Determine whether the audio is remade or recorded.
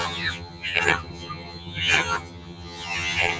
remade